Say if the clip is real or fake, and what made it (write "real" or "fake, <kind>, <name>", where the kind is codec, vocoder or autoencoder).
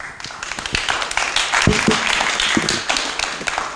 real